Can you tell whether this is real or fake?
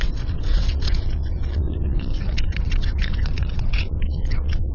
fake